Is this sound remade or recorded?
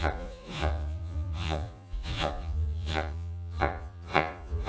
remade